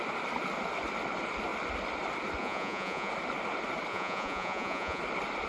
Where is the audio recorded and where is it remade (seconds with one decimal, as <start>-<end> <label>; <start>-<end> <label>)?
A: 0.0-2.4 recorded; 2.4-3.1 remade; 3.1-3.9 recorded; 3.9-5.0 remade; 5.0-5.5 recorded